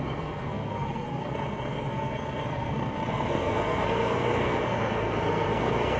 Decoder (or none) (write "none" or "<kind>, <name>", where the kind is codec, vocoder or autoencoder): codec, SNAC